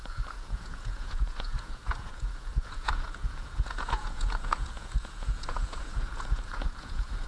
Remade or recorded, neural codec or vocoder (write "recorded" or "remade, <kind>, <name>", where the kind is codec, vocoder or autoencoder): remade, vocoder, Vocos